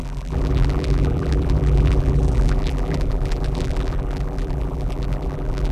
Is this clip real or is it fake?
fake